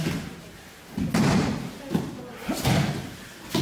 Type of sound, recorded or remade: recorded